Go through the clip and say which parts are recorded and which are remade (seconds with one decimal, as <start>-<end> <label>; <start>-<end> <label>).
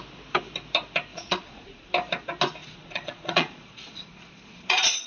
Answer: 0.0-1.1 recorded; 1.1-1.9 remade; 1.9-2.6 recorded; 2.6-5.1 remade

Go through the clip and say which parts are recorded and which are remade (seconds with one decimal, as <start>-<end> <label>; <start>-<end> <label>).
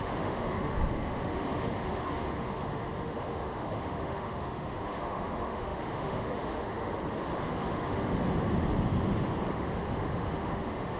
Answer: 0.0-6.9 remade; 6.9-7.5 recorded; 7.5-8.2 remade; 8.2-9.5 recorded; 9.5-11.0 remade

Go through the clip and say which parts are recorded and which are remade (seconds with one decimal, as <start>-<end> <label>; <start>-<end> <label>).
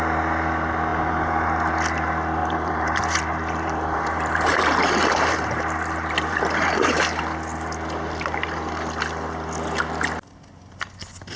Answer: 0.0-0.9 recorded; 0.9-1.7 remade; 1.7-2.4 recorded; 2.4-7.2 remade; 7.2-11.4 recorded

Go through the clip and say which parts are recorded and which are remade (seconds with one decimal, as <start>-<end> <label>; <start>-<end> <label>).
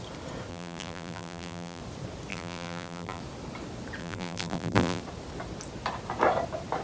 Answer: 0.0-0.5 recorded; 0.5-1.8 remade; 1.8-2.3 recorded; 2.3-3.2 remade; 3.2-4.0 recorded; 4.0-5.0 remade; 5.0-6.8 recorded